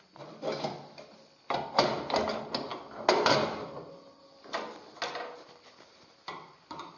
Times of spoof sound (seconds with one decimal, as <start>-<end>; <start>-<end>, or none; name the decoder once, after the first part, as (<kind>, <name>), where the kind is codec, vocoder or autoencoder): none